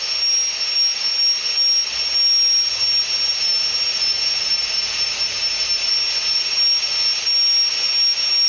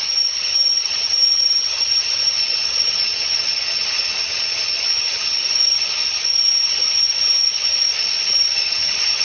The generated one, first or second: second